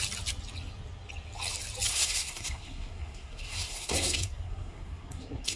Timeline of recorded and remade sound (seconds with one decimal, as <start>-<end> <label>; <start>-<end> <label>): 0.0-1.9 recorded; 1.9-5.6 remade